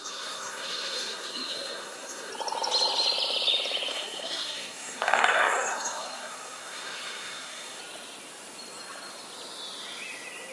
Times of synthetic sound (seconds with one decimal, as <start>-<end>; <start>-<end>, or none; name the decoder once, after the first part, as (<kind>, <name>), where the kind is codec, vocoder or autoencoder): 0.0-2.3 (codec, SNAC); 3.9-7.8